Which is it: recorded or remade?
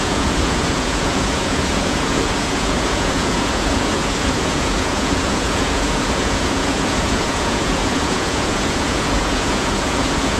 remade